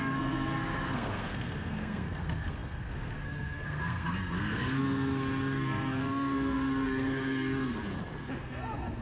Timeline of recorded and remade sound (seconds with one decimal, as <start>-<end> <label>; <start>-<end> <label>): 0.0-7.8 remade; 7.8-8.4 recorded; 8.4-9.0 remade